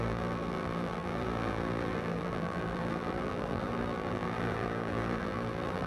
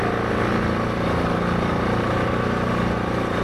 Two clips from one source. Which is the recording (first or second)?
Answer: second